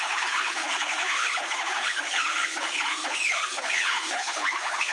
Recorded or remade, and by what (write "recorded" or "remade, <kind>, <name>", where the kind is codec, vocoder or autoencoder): remade, codec, HILCodec